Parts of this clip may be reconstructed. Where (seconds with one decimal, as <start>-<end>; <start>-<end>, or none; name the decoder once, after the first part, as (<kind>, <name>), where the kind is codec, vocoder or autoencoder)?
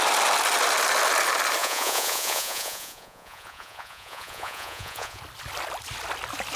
1.6-5.2 (vocoder, Vocos)